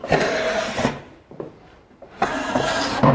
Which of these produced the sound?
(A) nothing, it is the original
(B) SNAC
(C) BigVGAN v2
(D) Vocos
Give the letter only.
C